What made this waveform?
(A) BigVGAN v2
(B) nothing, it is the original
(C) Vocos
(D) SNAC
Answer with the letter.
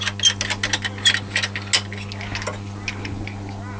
B